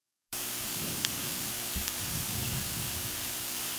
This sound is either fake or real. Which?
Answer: fake